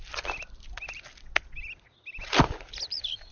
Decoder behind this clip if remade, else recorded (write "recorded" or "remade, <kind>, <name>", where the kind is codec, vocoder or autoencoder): recorded